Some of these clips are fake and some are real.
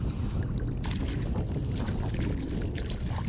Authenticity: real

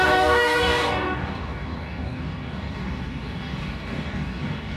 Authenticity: fake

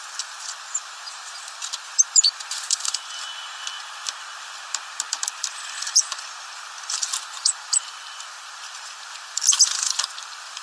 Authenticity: fake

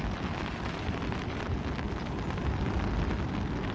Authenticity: real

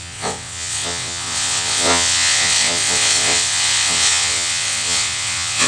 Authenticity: fake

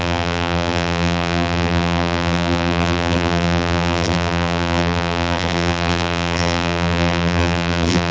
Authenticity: fake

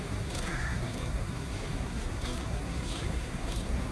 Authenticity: fake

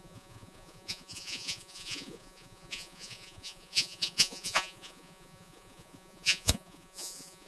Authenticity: fake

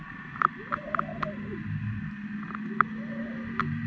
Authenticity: real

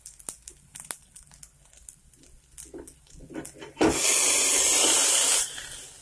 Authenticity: real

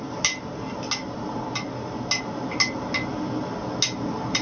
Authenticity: real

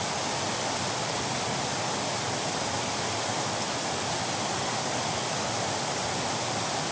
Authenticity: real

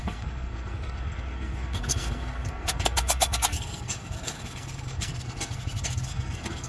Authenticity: fake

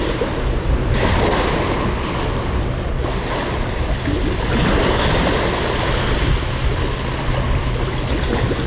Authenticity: real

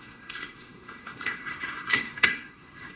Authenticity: fake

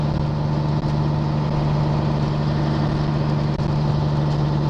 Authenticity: real